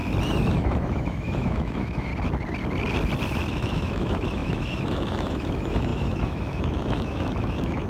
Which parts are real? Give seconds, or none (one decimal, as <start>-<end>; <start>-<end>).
0.0-0.5; 2.1-3.5